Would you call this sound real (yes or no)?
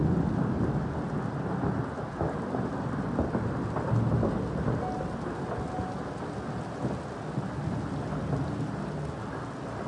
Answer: yes